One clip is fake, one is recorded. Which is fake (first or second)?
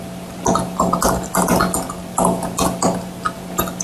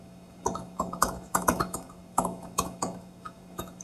second